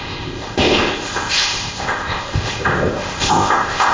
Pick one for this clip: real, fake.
fake